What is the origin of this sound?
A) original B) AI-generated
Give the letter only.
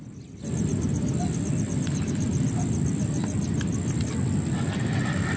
A